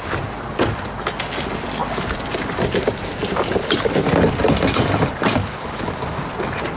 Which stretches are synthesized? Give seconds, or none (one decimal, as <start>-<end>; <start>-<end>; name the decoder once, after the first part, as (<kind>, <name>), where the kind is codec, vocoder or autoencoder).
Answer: 5.4-6.1 (autoencoder, DAC-VAE)